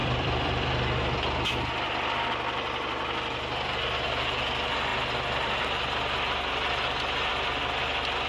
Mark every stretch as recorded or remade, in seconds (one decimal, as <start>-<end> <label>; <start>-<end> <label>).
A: 0.0-8.3 remade